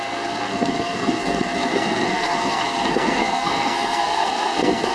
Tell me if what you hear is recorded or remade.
remade